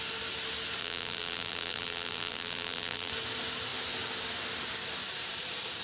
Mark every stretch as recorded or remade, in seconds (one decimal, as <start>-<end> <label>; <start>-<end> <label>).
0.0-0.8 recorded; 0.8-3.1 remade; 3.1-5.8 recorded

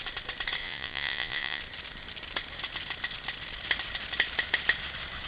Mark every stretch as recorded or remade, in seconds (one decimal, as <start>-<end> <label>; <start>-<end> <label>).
0.0-0.6 recorded; 0.6-1.6 remade; 1.6-5.3 recorded

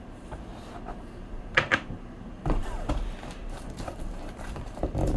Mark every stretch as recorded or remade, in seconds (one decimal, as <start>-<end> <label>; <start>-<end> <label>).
0.0-0.5 remade; 0.5-1.2 recorded; 1.2-5.2 remade